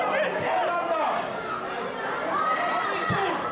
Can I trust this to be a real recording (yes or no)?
yes